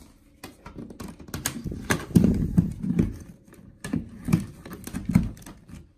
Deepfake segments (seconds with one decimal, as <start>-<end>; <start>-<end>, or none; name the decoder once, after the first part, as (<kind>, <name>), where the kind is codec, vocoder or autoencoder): 5.0-6.0 (vocoder, BigVGAN v2)